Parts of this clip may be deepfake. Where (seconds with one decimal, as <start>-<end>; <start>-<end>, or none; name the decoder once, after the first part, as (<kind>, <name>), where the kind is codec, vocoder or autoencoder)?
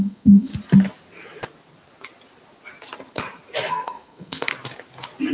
0.0-0.5 (codec, SNAC); 3.7-4.5